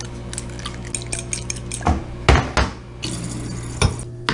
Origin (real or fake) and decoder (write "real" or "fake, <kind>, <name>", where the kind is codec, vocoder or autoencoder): real